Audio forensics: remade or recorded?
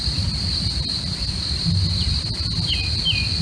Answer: recorded